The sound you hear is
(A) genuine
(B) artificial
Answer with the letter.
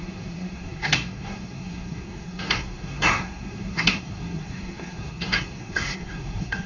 B